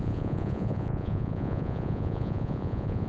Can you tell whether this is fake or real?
fake